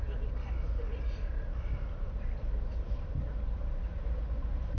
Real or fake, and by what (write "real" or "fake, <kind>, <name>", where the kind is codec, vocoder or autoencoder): real